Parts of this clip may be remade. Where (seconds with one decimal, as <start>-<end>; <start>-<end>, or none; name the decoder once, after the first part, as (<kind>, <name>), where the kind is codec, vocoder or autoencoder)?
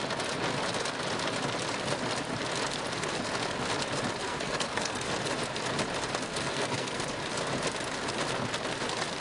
4.2-5.1 (codec, SNAC); 6.3-7.0